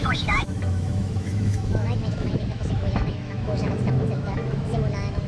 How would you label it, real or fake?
fake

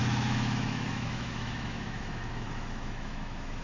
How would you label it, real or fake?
fake